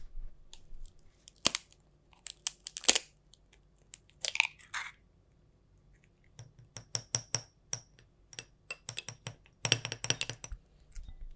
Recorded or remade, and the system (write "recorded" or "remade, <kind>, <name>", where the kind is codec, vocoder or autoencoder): recorded